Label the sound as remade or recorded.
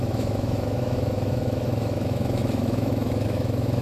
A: remade